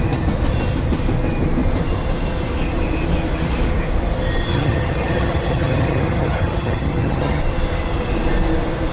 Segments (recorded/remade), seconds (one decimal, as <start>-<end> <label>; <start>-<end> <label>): 0.0-4.5 recorded; 4.5-7.4 remade; 7.4-8.9 recorded